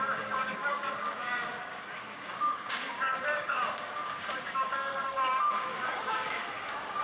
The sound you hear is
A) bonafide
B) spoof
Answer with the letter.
B